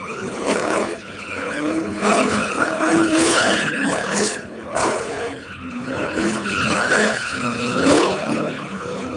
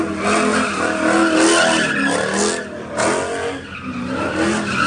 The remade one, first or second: first